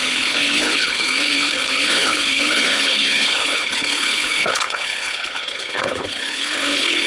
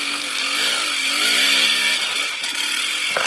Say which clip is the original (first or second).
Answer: second